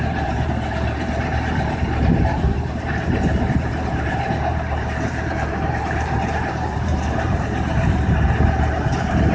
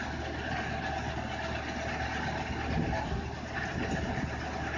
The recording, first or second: second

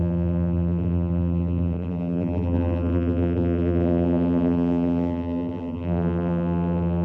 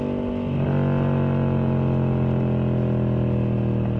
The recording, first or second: second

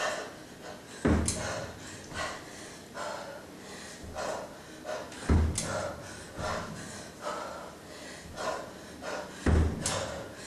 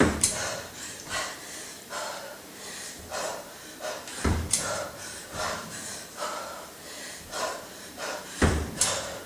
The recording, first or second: first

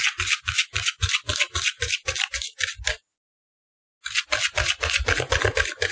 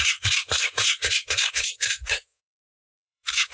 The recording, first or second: first